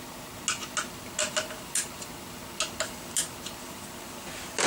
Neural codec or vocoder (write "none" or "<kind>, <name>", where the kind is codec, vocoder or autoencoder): none